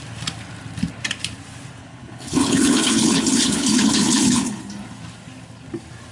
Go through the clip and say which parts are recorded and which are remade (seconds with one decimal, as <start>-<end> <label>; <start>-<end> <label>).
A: 0.0-1.8 recorded; 1.8-4.6 remade; 4.6-6.1 recorded